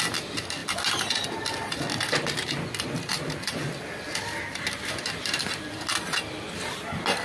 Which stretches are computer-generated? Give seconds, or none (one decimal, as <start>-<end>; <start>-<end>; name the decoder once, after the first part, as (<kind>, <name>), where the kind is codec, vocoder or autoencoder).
none